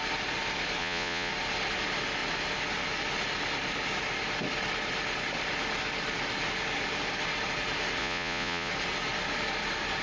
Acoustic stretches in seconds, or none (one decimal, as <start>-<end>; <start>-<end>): 0.0-0.8; 1.3-8.0; 8.7-10.0